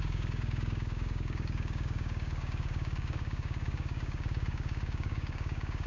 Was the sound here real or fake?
fake